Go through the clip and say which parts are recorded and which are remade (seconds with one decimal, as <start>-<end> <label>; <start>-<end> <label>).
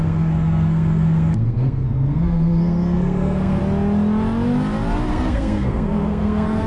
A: 0.0-3.6 remade; 3.6-5.1 recorded; 5.1-6.7 remade